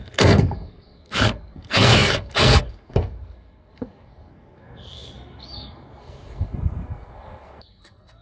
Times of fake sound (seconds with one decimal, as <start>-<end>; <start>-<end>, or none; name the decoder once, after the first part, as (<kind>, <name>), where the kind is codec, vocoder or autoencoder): 0.0-8.2 (codec, SNAC)